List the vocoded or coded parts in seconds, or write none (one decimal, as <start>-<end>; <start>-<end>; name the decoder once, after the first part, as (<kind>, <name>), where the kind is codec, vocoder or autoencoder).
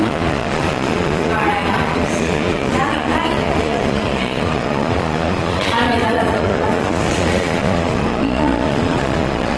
0.0-9.6 (vocoder, Vocos)